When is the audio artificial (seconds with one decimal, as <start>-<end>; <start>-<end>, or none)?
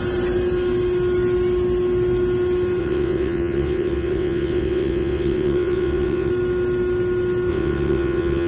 2.8-6.3; 7.5-8.5